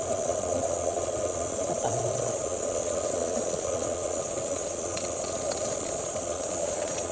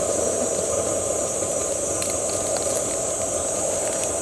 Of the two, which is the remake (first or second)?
first